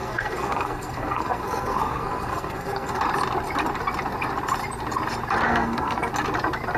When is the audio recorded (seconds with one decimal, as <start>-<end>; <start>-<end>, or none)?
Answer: 3.0-5.5; 6.1-6.8